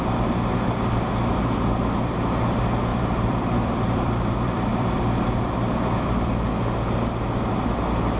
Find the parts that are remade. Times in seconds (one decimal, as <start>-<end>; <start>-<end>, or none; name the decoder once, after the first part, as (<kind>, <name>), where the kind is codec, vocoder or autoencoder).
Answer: 2.9-6.5 (vocoder, BigVGAN v2)